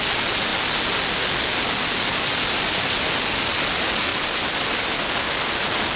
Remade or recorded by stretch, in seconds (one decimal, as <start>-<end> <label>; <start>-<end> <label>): 0.0-4.1 recorded; 4.1-6.0 remade